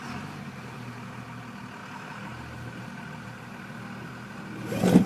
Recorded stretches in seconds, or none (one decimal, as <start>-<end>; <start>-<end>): 0.0-1.8; 3.5-5.1